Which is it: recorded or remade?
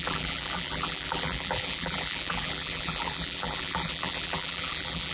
remade